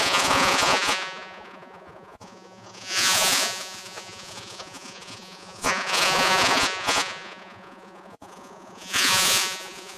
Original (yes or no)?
no